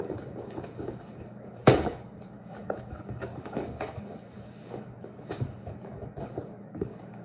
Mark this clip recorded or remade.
remade